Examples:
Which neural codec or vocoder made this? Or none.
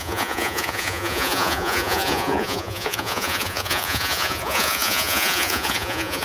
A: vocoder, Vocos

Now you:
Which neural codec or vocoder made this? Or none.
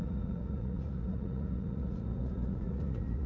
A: vocoder, Vocos